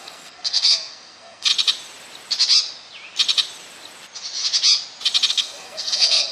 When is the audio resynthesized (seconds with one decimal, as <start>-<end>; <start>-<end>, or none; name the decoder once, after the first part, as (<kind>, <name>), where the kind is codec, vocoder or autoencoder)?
0.0-1.5 (codec, SNAC); 5.3-6.3